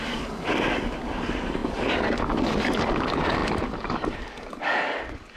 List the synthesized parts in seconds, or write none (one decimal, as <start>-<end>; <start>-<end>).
0.0-5.4